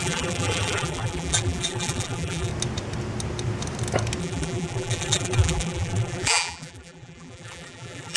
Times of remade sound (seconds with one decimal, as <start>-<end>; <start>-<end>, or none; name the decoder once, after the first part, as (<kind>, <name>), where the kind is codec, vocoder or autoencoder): 0.0-2.5 (vocoder, BigVGAN v2); 4.2-8.2